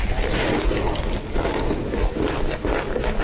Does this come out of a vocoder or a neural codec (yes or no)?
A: no